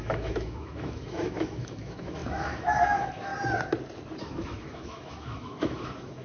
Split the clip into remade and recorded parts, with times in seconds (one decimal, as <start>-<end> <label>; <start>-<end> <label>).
0.0-3.3 remade; 3.3-4.2 recorded; 4.2-6.2 remade